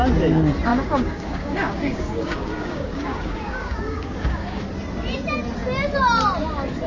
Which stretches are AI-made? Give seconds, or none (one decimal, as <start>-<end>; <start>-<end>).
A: 0.7-4.6